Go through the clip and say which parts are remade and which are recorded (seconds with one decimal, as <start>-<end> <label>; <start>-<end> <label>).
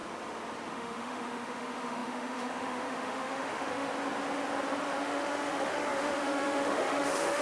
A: 0.0-0.7 recorded; 0.7-3.9 remade; 3.9-4.8 recorded; 4.8-7.4 remade